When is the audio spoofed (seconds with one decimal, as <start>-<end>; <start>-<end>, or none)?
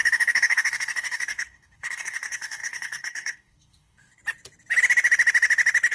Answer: 0.0-4.2